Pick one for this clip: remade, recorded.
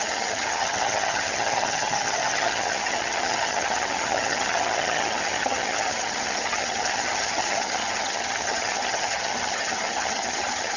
remade